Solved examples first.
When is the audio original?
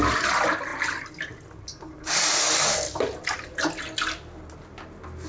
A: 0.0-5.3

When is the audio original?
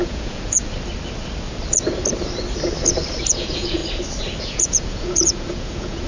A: 0.6-3.3; 3.8-4.4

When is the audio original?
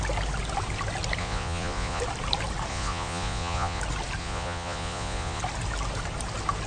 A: 0.0-1.2; 2.0-2.7; 3.8-4.2; 5.4-6.7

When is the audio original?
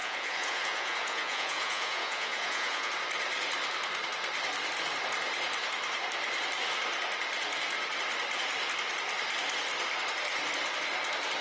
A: 2.9-11.4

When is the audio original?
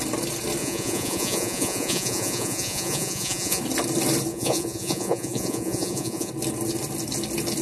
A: 0.0-0.6; 3.6-4.3; 6.3-7.6